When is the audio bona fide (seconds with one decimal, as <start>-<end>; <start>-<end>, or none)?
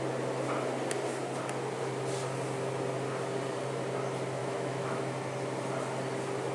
0.0-4.4; 5.0-6.5